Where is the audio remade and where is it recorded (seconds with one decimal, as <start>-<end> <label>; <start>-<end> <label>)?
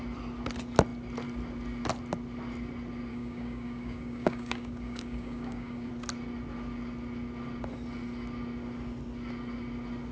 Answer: 0.0-3.1 recorded; 3.1-5.9 remade; 5.9-10.1 recorded